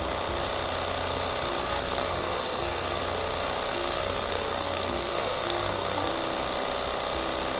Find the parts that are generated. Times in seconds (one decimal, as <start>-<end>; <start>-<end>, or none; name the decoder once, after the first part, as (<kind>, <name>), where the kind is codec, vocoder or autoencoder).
1.6-3.0 (codec, SNAC); 3.7-6.1